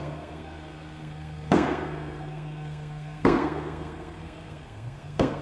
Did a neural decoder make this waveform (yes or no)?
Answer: yes